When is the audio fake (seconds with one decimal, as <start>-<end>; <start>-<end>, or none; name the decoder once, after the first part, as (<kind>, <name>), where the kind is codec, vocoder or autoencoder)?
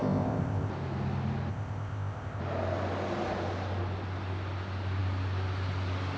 0.0-0.7 (codec, ZipCodec); 1.5-2.4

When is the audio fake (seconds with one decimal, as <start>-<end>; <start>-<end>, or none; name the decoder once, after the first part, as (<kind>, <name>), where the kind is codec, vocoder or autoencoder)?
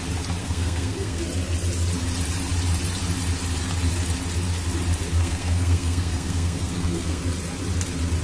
0.4-1.2 (codec, SNAC); 5.2-7.2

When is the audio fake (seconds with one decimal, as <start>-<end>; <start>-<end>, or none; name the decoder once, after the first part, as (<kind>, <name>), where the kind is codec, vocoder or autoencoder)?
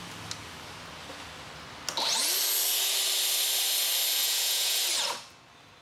4.2-4.8 (vocoder, Vocos)